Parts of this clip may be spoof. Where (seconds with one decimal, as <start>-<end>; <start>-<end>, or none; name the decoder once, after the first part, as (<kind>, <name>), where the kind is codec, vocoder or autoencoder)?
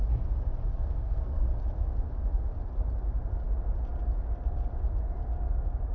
0.7-1.5 (codec, SNAC)